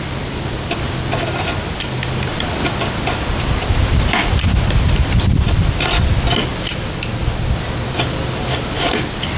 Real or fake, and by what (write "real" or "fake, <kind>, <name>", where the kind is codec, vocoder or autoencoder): real